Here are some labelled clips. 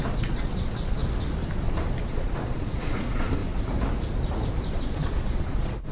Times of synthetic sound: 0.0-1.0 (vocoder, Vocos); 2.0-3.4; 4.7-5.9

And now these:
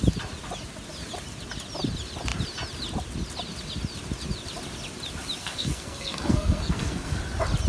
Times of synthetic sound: 5.4-7.2 (codec, SNAC)

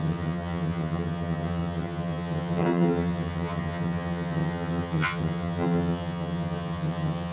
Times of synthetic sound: 0.0-7.3 (vocoder, HiFi-GAN)

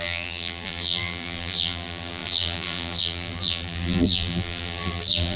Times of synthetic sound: 0.0-5.4 (vocoder, BigVGAN v2)

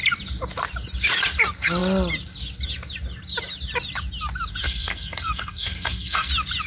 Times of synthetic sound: 4.6-6.3 (codec, SNAC)

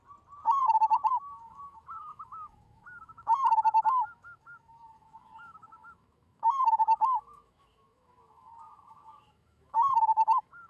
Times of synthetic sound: 1.1-10.7 (autoencoder, DAC-VAE)

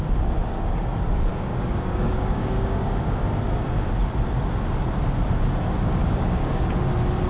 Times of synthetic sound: 0.4-0.9 (codec, DAC); 1.3-3.2; 6.0-6.7

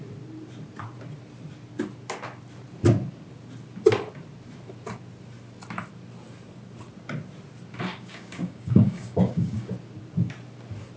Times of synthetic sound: 7.9-9.7 (codec, DAC)